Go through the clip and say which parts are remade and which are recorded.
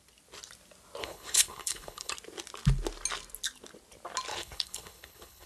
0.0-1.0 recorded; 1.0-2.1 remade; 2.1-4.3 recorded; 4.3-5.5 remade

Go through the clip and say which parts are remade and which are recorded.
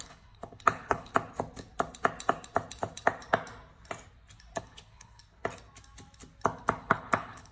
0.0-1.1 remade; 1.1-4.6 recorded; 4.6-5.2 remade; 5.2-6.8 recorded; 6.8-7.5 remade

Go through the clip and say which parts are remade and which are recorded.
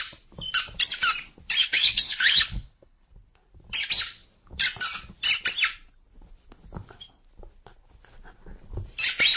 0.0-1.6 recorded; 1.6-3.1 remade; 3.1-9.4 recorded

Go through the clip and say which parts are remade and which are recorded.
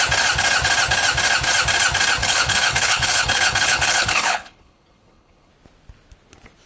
0.0-2.2 recorded; 2.2-5.5 remade; 5.5-6.7 recorded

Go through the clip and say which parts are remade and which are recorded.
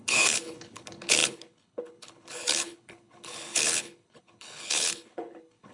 0.0-5.7 remade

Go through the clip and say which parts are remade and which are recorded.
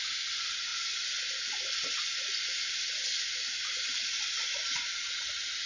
0.0-5.7 recorded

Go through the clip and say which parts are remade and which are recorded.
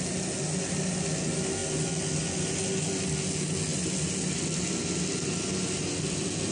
0.0-6.5 recorded